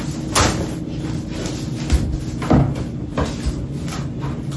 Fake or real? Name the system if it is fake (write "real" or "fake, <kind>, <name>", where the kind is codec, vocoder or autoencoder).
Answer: real